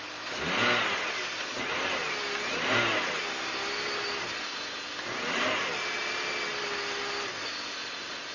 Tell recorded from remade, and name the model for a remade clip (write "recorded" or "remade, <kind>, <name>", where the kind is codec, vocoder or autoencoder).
recorded